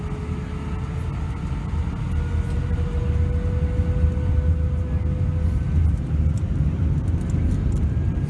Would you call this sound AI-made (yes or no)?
no